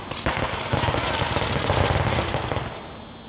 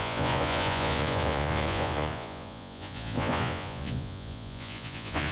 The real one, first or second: first